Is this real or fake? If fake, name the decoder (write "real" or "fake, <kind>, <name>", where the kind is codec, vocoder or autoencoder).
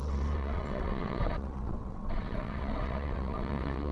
fake, vocoder, WaveNeXt